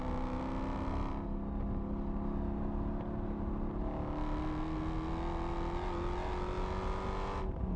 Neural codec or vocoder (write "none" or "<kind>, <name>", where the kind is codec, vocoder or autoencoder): none